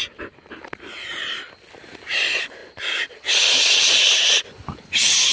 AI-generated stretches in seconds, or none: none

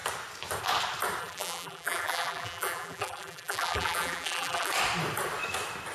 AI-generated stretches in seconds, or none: 1.2-4.7 (vocoder, BigVGAN v2)

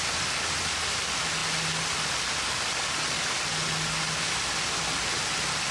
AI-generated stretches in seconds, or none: none

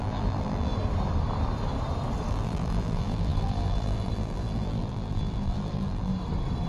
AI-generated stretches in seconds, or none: 0.0-0.7 (vocoder, BigVGAN v2); 2.3-6.1

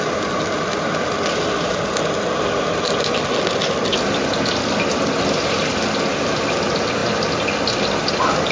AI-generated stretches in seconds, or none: none

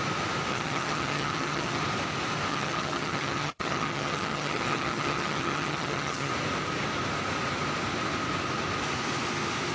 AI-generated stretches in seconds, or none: 0.5-1.8 (vocoder, HiFi-GAN); 2.5-6.3

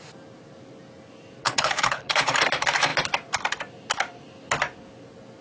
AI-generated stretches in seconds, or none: 1.4-2.3 (codec, HILCodec)